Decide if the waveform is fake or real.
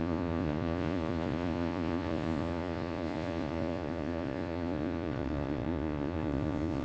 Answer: fake